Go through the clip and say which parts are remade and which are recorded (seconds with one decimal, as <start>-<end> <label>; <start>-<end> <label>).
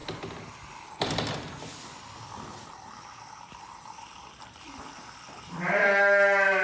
0.0-6.6 recorded